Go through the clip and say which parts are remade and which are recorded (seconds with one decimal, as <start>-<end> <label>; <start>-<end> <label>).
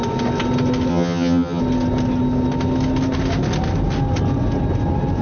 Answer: 0.0-0.9 recorded; 0.9-1.6 remade; 1.6-5.2 recorded